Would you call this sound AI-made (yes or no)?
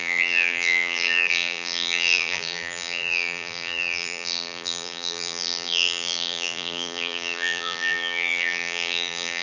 yes